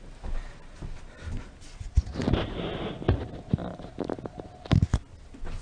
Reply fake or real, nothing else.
real